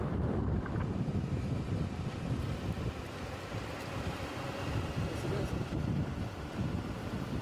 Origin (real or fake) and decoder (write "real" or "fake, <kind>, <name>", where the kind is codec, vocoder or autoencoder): fake, vocoder, BigVGAN v2